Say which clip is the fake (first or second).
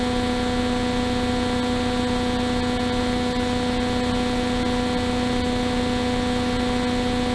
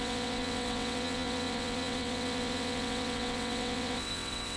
second